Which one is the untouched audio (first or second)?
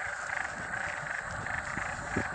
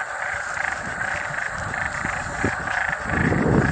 first